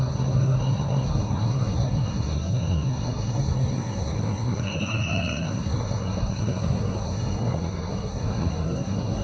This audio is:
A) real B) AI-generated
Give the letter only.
B